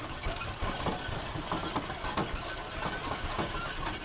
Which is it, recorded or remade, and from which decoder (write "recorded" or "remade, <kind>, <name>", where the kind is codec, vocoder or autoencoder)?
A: recorded